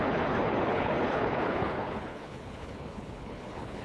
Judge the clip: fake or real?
fake